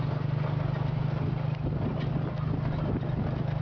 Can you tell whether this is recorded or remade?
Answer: recorded